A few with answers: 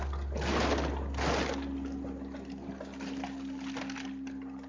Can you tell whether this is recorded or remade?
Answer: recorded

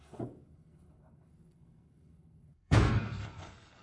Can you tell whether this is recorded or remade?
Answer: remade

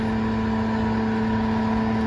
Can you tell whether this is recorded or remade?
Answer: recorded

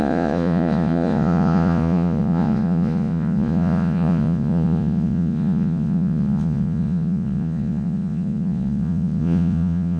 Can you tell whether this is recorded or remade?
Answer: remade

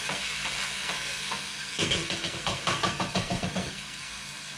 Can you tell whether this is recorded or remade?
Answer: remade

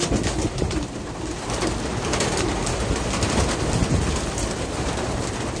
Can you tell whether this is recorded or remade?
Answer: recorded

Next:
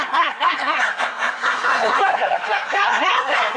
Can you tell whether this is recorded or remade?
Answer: remade